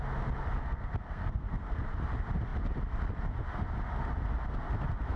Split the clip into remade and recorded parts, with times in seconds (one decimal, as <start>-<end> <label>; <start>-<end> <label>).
0.0-0.6 recorded; 0.6-1.8 remade; 1.8-5.2 recorded